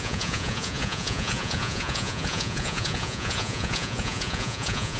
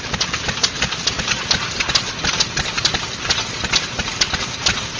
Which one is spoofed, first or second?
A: first